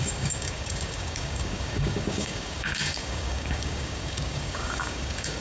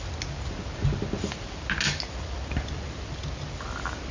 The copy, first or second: first